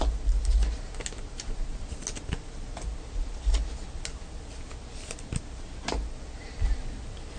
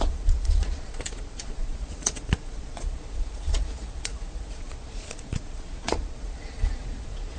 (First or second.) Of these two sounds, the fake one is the second